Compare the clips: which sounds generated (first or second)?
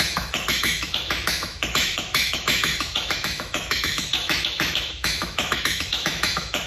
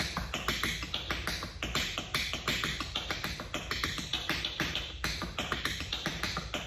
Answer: first